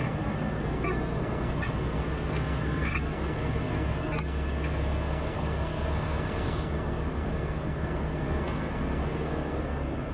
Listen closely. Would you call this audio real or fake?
fake